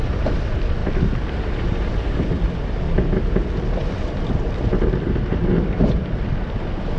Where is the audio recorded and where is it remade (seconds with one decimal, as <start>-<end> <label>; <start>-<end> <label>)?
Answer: 0.0-7.0 remade